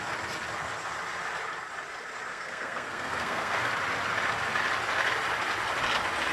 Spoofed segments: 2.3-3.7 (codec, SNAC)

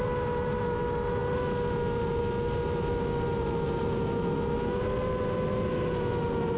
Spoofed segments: none

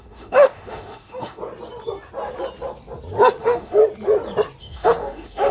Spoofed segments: 0.0-1.4 (autoencoder, DAC-VAE); 3.4-3.8; 4.6-5.5

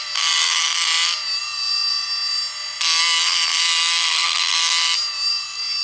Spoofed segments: none

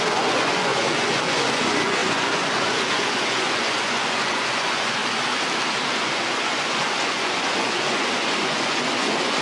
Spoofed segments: 0.0-5.0 (vocoder, Vocos); 6.0-9.4

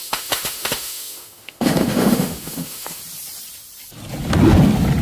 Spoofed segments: 0.0-3.0 (autoencoder, DAC-VAE)

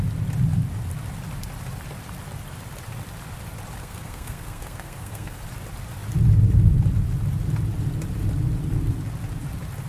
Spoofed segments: 3.8-5.4 (codec, SNAC)

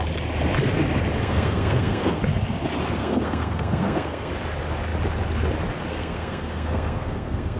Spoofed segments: 1.2-2.2 (codec, SNAC); 3.0-4.3; 5.9-7.6